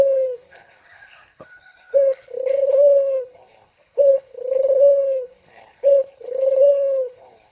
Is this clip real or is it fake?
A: fake